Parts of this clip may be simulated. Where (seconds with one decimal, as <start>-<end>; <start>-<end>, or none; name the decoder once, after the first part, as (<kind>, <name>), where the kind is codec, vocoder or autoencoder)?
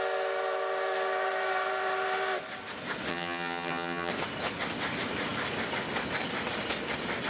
3.1-4.1 (vocoder, HiFi-GAN)